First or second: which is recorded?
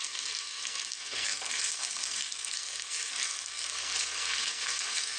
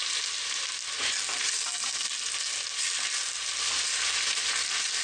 second